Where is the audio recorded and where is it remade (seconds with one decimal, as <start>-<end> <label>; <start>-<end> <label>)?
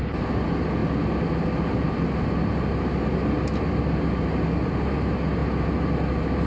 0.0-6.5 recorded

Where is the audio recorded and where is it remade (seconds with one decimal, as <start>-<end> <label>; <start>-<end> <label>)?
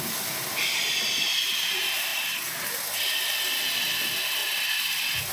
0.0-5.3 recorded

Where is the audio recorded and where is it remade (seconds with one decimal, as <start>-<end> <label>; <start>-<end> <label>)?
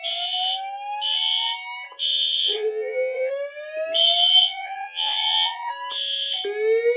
0.0-2.4 recorded; 2.4-3.3 remade; 3.3-4.4 recorded; 4.4-5.7 remade; 5.7-7.0 recorded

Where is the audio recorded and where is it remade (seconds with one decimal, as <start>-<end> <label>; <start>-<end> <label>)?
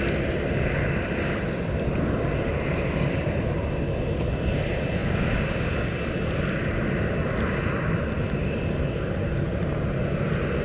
0.0-10.6 recorded